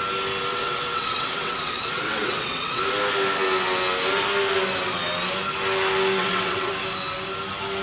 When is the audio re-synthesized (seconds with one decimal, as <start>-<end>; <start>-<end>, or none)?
0.5-2.8; 6.2-6.7